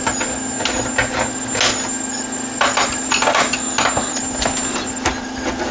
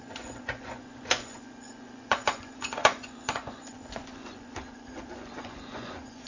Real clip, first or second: first